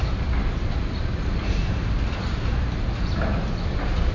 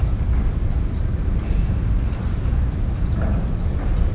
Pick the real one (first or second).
first